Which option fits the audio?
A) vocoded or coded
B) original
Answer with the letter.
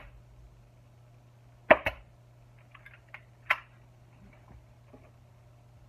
B